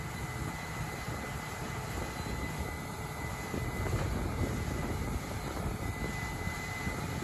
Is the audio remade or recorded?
recorded